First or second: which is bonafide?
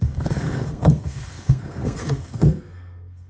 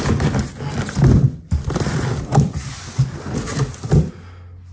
second